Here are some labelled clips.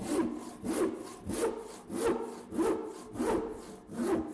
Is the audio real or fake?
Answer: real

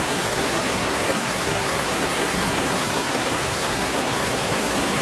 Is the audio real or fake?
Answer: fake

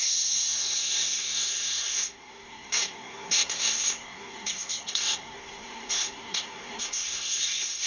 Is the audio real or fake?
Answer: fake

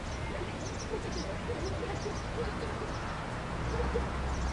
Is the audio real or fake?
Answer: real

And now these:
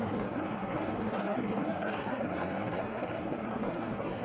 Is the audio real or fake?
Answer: fake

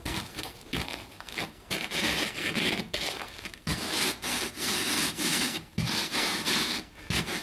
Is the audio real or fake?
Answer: fake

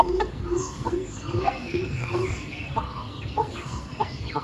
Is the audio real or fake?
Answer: fake